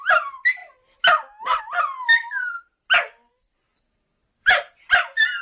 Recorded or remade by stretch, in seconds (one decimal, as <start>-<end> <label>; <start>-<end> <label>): 0.0-2.2 recorded; 2.2-2.7 remade; 2.7-3.7 recorded; 3.7-4.7 remade; 4.7-5.4 recorded